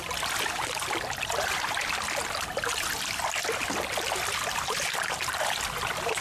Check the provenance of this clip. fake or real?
real